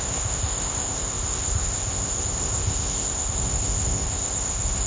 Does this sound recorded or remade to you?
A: remade